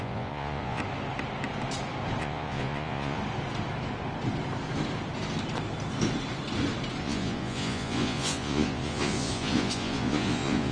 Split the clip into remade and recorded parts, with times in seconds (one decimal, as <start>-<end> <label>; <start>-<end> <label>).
0.0-0.8 remade; 0.8-2.2 recorded; 2.2-3.2 remade; 3.2-7.0 recorded; 7.0-10.7 remade

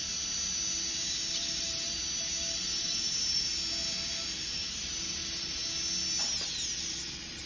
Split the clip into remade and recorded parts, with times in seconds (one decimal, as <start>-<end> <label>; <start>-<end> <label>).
0.0-1.4 recorded; 1.4-2.0 remade; 2.0-2.5 recorded; 2.5-3.5 remade; 3.5-4.3 recorded; 4.3-5.6 remade; 5.6-6.8 recorded; 6.8-7.5 remade